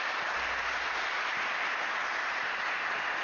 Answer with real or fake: real